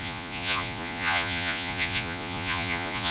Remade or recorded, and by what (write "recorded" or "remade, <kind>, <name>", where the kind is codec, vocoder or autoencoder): remade, vocoder, Vocos